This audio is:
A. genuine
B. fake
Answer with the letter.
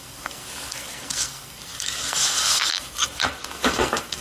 B